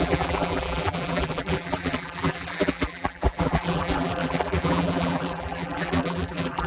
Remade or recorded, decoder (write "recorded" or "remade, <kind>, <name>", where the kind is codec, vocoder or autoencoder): remade, vocoder, BigVGAN v2